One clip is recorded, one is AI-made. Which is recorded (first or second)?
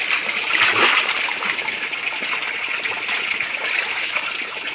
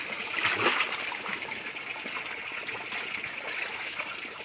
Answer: second